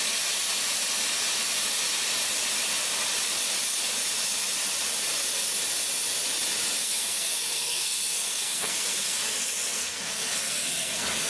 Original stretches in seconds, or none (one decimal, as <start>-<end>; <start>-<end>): 0.0-6.8